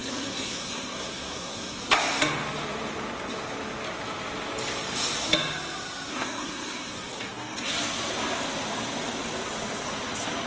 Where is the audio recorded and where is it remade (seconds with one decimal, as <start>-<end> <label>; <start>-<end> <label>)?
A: 0.0-1.8 remade; 1.8-6.1 recorded; 6.1-7.7 remade; 7.7-10.5 recorded